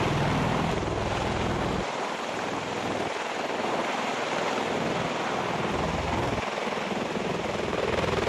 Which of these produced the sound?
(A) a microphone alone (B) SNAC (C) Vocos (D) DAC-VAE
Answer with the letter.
A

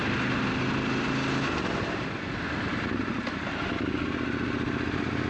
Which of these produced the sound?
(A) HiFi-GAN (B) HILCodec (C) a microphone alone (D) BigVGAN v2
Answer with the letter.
C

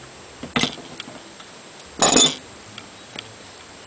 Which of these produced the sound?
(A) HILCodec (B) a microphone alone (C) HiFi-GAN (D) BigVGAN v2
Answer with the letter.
B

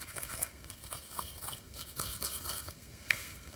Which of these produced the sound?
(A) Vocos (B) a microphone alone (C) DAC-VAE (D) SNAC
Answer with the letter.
D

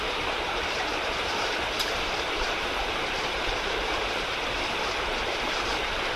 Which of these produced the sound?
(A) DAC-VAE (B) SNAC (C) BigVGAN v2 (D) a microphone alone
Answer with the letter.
C